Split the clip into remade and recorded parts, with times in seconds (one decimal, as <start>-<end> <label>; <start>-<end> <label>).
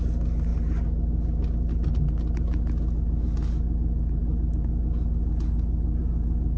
0.0-6.6 recorded